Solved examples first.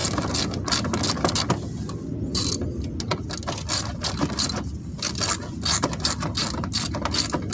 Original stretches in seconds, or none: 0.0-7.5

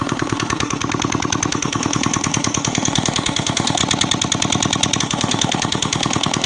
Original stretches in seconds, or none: 0.8-1.5; 3.8-5.0

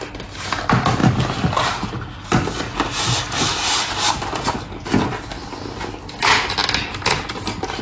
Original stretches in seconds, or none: 0.0-7.8

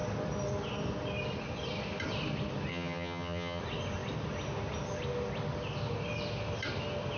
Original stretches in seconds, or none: 0.0-2.7; 3.6-7.2

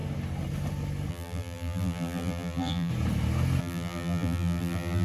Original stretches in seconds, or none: 0.0-1.1; 2.9-3.6

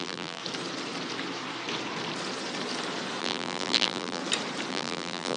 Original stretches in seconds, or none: 0.4-3.2; 4.2-4.7